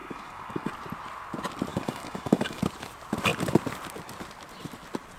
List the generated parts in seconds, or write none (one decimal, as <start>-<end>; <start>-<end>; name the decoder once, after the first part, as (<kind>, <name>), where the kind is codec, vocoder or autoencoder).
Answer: 0.0-0.7 (codec, DAC); 1.7-2.6

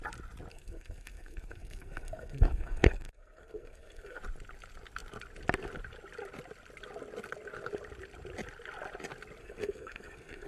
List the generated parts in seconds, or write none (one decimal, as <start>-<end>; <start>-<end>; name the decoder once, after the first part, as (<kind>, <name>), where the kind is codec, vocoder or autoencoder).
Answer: 0.5-4.2 (codec, SNAC); 9.4-10.5

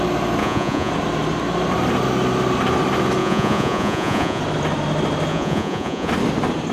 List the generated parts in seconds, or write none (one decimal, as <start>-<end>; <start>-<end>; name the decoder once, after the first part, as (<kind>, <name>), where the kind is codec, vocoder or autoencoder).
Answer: 0.4-0.9 (vocoder, Vocos); 3.2-4.4; 5.3-6.1

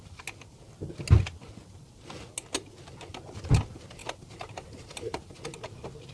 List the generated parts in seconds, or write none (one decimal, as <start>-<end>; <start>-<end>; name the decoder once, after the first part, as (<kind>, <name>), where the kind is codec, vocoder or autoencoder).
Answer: 4.0-5.4 (vocoder, BigVGAN v2)